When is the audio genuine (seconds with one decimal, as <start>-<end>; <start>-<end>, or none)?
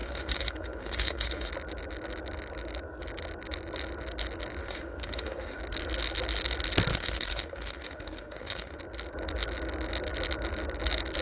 1.5-4.6; 5.6-6.9; 8.8-11.2